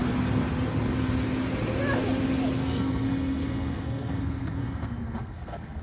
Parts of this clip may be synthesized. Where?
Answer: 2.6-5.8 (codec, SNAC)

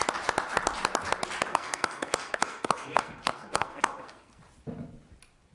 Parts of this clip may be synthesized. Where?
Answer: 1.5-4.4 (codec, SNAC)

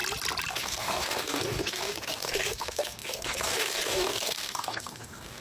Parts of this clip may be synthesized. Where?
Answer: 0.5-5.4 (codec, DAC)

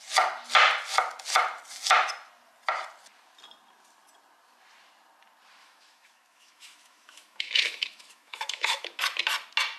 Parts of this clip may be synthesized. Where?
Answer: 5.6-9.0 (autoencoder, DAC-VAE)

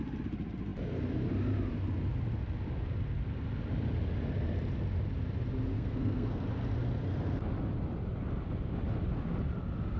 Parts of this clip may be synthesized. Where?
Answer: 5.7-6.4 (codec, SNAC)

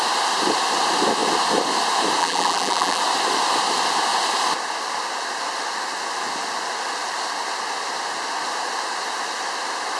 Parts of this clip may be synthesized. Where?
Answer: 2.2-3.0 (vocoder, BigVGAN v2)

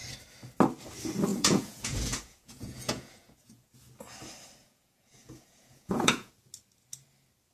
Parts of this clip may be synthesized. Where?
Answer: 1.3-3.7 (vocoder, Vocos); 4.6-6.3